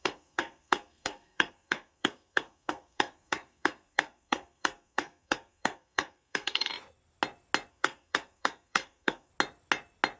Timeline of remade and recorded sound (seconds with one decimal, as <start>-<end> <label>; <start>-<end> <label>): 0.0-6.7 remade; 6.7-7.7 recorded; 7.7-9.3 remade; 9.3-10.2 recorded